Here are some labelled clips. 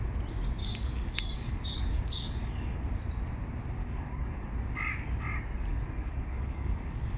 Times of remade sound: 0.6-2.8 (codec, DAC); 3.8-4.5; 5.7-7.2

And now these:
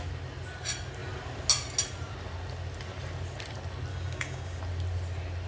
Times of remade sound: 3.9-4.6 (codec, DAC)

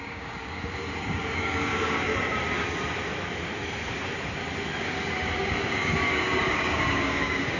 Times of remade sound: 0.0-2.1 (codec, DAC); 4.8-7.6

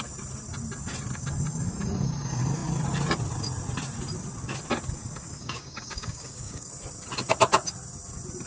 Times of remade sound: 5.4-6.7 (codec, DAC)

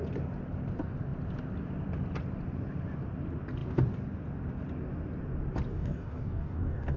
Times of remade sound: 5.7-7.0 (codec, DAC)